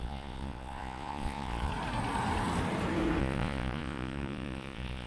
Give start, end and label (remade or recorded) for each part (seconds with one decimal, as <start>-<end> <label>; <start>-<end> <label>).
0.0-1.7 remade; 1.7-3.2 recorded; 3.2-5.1 remade